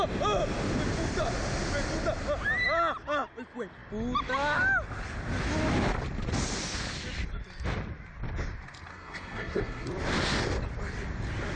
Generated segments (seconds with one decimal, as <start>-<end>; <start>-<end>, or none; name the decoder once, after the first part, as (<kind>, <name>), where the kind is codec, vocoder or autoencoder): 8.9-9.9 (codec, SNAC)